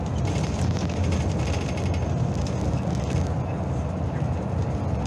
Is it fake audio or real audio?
real